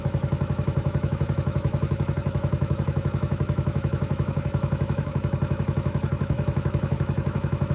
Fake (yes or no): yes